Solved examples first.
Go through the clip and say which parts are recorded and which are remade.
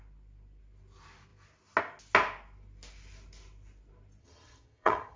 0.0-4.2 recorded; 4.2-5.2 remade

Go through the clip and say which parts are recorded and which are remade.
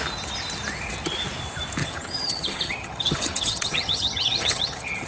0.0-1.8 recorded; 1.8-5.1 remade